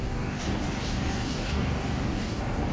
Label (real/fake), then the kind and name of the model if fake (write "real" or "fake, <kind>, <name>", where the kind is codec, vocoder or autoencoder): fake, codec, DAC